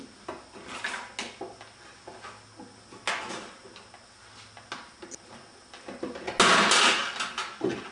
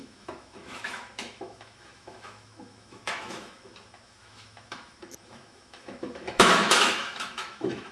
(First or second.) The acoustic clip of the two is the first